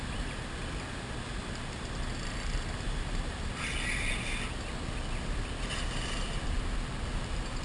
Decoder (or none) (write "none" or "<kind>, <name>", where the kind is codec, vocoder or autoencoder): none